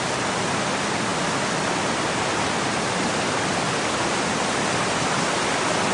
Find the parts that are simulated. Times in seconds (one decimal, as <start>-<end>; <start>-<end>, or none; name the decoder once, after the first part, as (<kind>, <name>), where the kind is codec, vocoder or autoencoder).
none